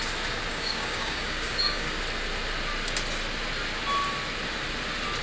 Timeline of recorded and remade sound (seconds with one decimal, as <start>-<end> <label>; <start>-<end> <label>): 0.0-0.5 recorded; 0.5-2.0 remade; 2.0-5.2 recorded